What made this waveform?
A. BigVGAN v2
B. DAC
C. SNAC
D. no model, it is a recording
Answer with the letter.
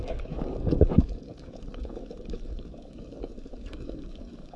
B